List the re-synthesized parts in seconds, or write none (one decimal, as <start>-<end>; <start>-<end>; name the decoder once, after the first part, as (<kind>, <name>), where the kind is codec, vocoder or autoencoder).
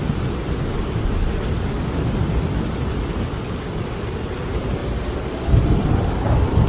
none